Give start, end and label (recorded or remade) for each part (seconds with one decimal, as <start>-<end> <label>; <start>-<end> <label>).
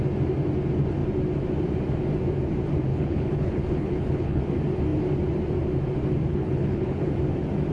0.0-2.9 recorded; 2.9-4.4 remade; 4.4-6.3 recorded; 6.3-7.1 remade; 7.1-7.7 recorded